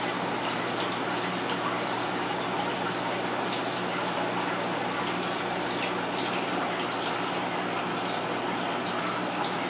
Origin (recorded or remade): recorded